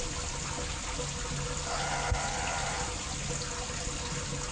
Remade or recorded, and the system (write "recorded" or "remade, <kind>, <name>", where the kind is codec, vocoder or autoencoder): recorded